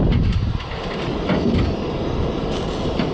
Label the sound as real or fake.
real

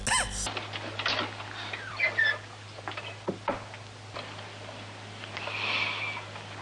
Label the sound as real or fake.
real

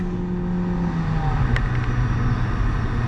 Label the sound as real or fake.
real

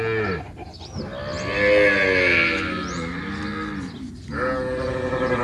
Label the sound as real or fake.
real